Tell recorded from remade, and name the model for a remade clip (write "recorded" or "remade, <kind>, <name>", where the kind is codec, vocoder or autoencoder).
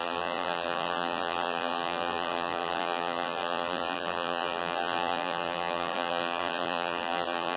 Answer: remade, vocoder, BigVGAN v2